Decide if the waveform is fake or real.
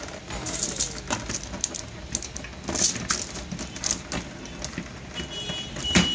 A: real